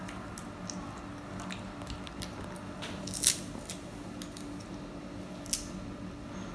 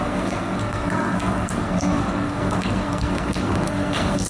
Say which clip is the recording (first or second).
first